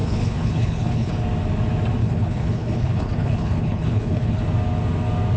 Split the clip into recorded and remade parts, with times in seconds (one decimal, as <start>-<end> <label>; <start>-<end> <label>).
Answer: 0.0-1.1 remade; 1.1-2.0 recorded; 2.0-4.4 remade; 4.4-5.4 recorded